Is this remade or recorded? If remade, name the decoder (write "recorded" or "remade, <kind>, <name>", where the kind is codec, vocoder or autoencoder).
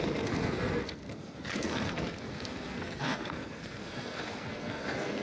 remade, codec, SNAC